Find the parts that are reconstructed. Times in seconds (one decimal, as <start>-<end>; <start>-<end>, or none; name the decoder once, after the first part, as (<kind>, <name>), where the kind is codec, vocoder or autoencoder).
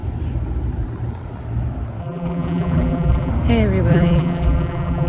2.0-3.3 (vocoder, BigVGAN v2); 3.9-5.1